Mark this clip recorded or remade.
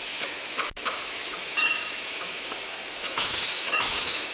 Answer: remade